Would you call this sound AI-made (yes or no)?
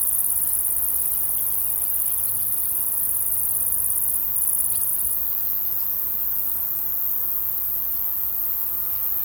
no